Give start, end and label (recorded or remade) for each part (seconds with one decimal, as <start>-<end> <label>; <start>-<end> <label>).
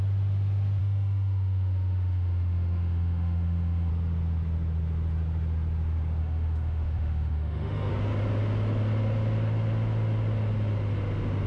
0.0-0.8 recorded; 0.8-3.9 remade; 3.9-6.2 recorded; 6.2-7.9 remade; 7.9-11.5 recorded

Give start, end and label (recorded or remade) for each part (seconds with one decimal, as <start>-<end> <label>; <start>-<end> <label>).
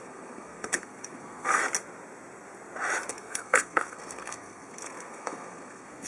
0.0-1.6 remade; 1.6-3.1 recorded; 3.1-6.1 remade